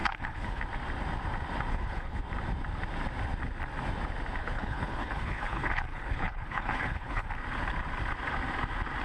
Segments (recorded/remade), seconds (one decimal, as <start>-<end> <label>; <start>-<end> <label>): 0.0-0.6 remade; 0.6-1.7 recorded; 1.7-2.2 remade; 2.2-4.4 recorded; 4.4-7.3 remade; 7.3-9.0 recorded

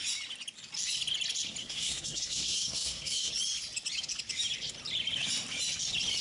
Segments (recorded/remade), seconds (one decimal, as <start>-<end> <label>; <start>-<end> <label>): 0.0-1.6 recorded; 1.6-3.3 remade; 3.3-6.2 recorded

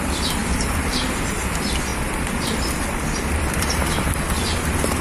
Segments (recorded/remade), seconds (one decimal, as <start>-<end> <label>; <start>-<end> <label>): 0.0-0.4 recorded; 0.4-1.1 remade; 1.1-1.9 recorded; 1.9-5.0 remade

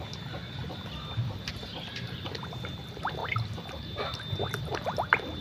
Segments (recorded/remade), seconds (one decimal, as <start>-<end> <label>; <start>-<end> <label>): 0.0-3.2 remade; 3.2-3.7 recorded; 3.7-5.4 remade

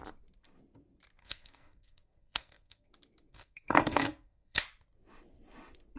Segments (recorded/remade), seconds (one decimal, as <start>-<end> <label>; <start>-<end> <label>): 0.0-1.2 recorded; 1.2-2.9 remade; 2.9-3.3 recorded; 3.3-4.6 remade; 4.6-6.0 recorded

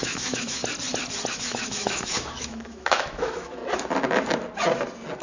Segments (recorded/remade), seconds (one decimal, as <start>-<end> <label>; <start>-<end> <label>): 0.0-0.6 remade; 0.6-1.3 recorded; 1.3-3.6 remade; 3.6-5.2 recorded